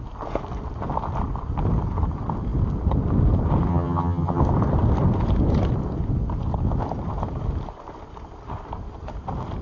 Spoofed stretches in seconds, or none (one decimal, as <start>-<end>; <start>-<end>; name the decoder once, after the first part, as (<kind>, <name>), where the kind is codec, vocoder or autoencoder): 3.7-4.4 (vocoder, HiFi-GAN)

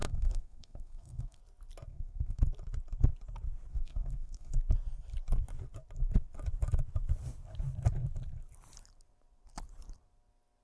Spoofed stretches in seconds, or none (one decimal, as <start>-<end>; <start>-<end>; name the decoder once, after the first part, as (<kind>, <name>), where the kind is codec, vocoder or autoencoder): 0.0-1.4 (codec, SNAC); 1.9-2.4; 3.7-4.5

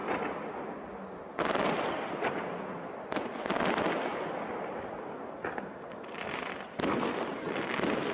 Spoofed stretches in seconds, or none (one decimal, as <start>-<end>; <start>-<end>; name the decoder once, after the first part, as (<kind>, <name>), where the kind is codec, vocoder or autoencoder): none

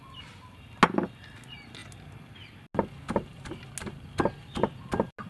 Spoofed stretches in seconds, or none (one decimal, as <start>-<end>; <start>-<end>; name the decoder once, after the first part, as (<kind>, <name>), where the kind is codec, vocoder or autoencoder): none

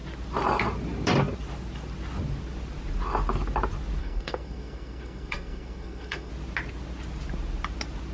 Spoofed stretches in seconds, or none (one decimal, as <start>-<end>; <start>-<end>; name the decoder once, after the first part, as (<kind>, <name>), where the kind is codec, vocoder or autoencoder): 4.0-6.3 (codec, SNAC)

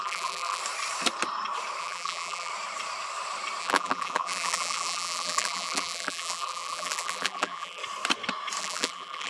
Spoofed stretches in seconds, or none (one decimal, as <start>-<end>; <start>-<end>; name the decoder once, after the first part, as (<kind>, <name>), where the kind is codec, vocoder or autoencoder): 0.0-0.6 (vocoder, BigVGAN v2); 1.8-2.5; 3.6-7.8; 8.6-9.3